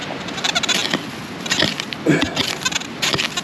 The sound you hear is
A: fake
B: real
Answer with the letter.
B